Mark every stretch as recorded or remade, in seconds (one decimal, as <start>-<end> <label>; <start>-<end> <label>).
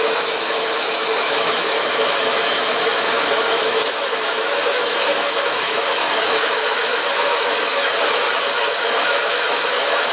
0.0-7.8 remade; 7.8-8.7 recorded; 8.7-10.1 remade